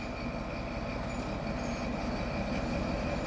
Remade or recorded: recorded